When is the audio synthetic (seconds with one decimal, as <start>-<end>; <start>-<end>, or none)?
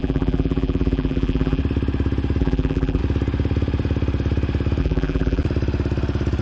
0.0-1.6; 2.4-3.0; 4.8-5.4